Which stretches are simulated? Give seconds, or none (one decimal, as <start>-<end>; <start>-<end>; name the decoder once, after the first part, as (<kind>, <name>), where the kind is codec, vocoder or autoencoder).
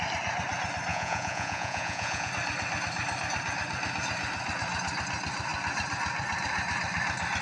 0.9-2.3 (vocoder, Vocos)